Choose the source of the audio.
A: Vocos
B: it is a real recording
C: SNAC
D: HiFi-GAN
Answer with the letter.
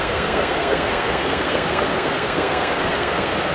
C